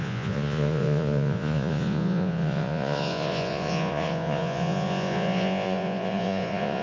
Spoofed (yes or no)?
yes